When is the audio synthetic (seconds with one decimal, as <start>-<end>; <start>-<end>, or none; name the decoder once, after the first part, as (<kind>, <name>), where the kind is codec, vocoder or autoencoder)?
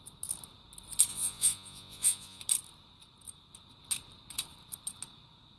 1.1-2.4 (vocoder, Vocos)